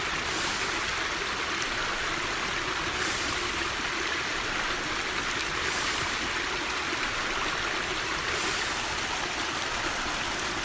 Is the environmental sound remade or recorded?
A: recorded